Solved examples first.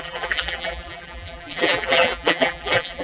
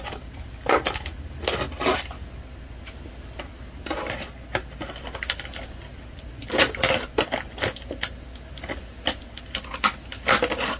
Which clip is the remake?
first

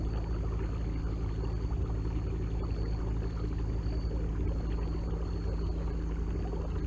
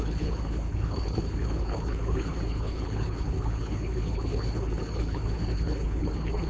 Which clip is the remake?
second